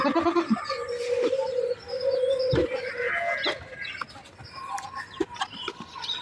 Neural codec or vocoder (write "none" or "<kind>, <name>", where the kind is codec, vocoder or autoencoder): none